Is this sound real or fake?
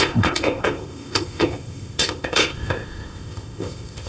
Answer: fake